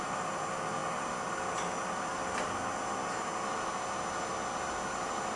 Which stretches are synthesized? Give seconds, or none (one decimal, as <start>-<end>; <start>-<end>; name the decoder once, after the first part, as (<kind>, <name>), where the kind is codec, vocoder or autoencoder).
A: none